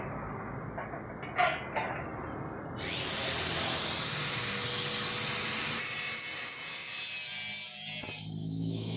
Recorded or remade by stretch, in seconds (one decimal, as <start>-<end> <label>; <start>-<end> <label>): 0.0-8.4 recorded; 8.4-9.0 remade